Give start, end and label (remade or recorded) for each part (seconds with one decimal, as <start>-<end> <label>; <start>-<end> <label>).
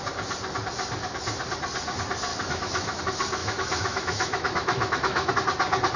0.0-2.3 recorded; 2.3-3.0 remade; 3.0-3.4 recorded; 3.4-5.3 remade; 5.3-6.0 recorded